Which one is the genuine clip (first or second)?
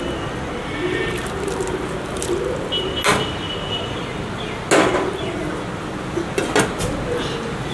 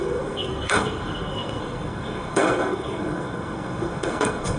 first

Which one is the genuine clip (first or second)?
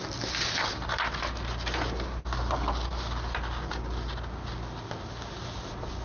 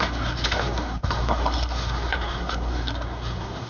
first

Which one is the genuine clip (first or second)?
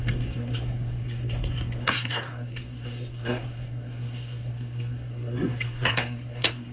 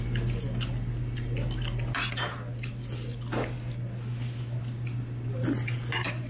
second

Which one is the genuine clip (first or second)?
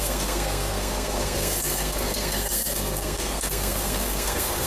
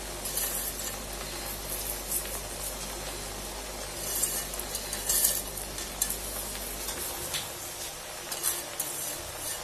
second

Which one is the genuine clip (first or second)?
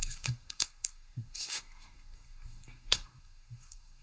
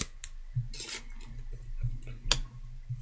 second